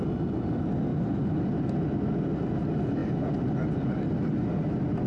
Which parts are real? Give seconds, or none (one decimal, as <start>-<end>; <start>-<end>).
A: 0.0-5.1